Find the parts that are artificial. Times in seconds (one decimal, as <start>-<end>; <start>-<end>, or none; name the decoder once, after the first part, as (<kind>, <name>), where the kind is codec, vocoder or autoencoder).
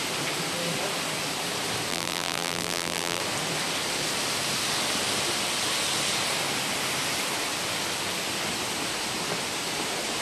1.9-3.2 (vocoder, BigVGAN v2)